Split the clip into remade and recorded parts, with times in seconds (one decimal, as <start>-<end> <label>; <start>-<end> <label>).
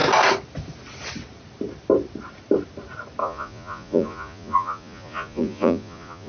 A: 0.0-3.2 recorded; 3.2-6.3 remade